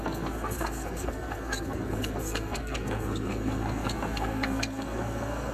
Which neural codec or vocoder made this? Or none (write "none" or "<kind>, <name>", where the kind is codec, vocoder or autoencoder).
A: codec, SNAC